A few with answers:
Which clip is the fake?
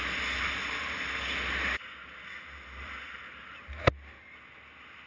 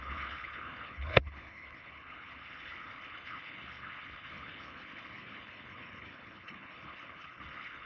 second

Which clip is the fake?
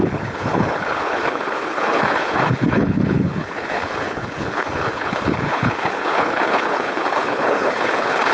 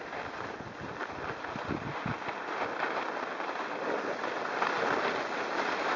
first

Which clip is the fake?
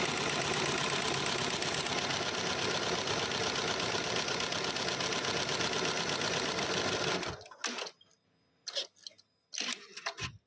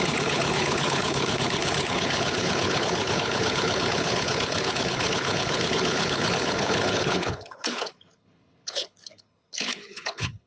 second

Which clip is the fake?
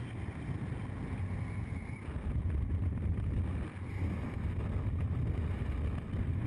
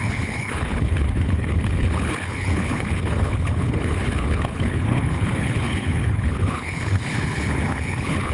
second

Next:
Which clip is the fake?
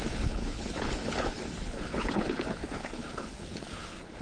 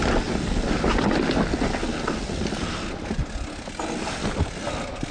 first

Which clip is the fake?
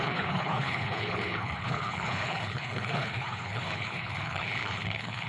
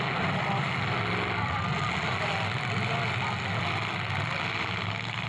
first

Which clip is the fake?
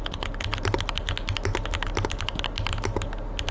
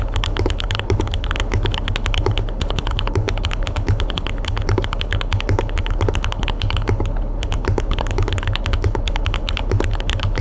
second